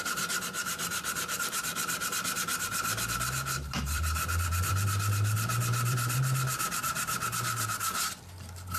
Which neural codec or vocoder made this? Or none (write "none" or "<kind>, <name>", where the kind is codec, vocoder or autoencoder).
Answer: vocoder, BigVGAN v2